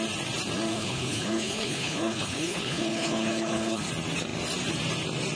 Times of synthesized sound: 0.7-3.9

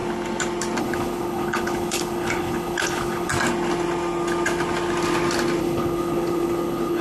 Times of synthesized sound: 0.8-3.3; 5.6-7.0

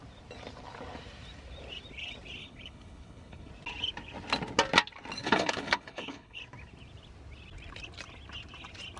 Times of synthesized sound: 2.4-3.5; 5.2-6.4